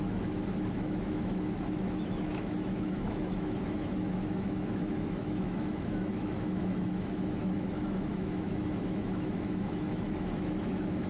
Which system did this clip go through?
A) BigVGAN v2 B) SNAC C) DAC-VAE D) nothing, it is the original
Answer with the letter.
C